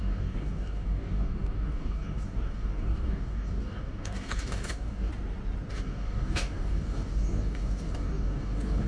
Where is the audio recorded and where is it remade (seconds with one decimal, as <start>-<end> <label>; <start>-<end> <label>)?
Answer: 0.0-5.1 remade; 5.1-5.7 recorded; 5.7-8.9 remade